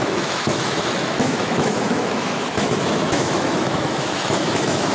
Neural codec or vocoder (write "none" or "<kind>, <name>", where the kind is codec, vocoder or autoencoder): autoencoder, DAC-VAE